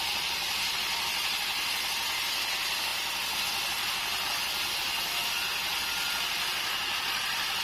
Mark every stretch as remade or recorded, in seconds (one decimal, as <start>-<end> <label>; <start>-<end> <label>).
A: 0.0-7.6 recorded